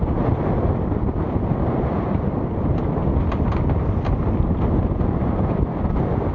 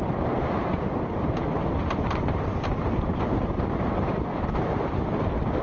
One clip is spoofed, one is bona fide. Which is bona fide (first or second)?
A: first